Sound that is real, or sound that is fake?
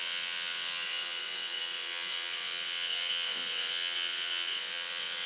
fake